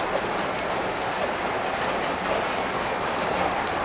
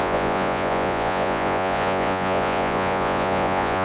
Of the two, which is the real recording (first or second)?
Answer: first